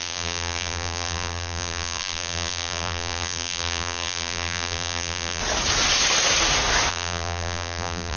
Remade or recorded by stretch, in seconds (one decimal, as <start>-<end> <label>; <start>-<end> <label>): 0.0-5.4 remade; 5.4-6.9 recorded; 6.9-8.2 remade